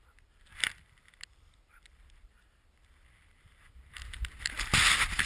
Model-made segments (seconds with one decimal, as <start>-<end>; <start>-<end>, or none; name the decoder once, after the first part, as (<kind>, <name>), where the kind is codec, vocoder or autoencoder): none